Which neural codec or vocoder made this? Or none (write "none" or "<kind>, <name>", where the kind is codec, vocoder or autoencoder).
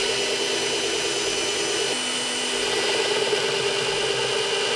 none